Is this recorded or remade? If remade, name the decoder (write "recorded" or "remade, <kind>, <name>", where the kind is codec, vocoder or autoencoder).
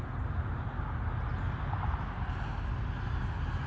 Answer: recorded